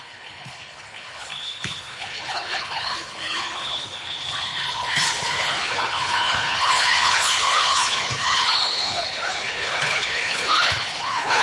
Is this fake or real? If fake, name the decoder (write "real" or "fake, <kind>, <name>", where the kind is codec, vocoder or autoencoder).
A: fake, codec, HILCodec